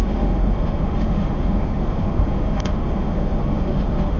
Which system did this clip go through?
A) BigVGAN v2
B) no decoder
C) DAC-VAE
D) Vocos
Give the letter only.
C